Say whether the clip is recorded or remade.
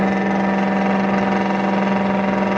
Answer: recorded